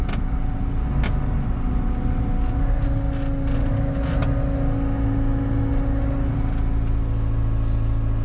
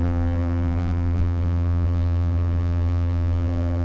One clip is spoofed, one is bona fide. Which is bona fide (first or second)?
first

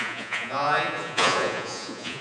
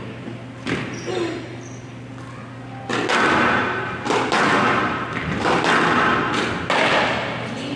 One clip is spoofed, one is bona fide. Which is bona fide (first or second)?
second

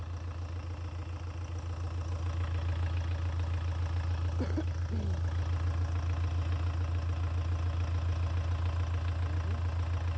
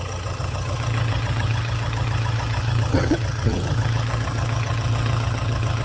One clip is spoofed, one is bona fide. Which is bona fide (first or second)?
first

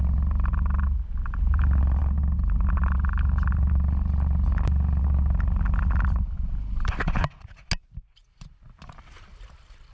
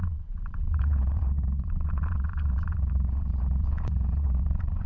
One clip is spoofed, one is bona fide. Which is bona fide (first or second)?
first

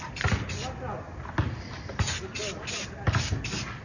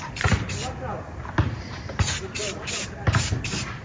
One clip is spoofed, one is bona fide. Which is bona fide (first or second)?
first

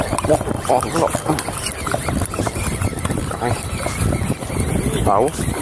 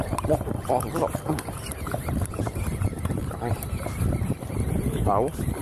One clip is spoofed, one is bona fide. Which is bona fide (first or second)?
first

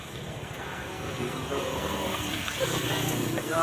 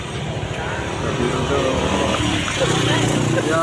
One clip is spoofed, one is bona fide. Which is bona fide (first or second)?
second